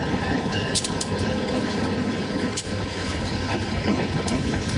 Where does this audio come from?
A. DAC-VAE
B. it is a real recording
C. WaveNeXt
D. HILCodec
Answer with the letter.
D